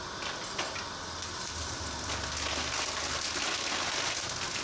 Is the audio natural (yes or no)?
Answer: yes